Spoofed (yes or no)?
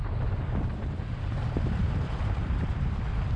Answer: no